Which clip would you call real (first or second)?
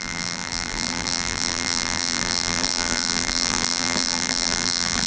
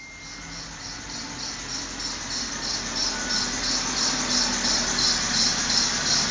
second